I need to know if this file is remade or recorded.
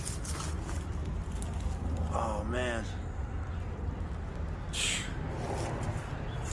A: recorded